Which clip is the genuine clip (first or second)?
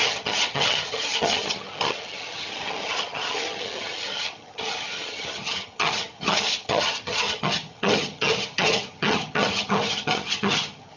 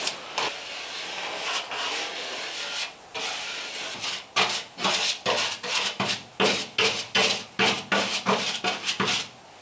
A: second